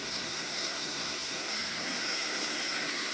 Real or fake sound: fake